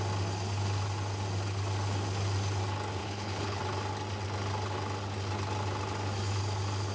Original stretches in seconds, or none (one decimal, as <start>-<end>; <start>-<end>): 0.0-3.0; 3.6-6.9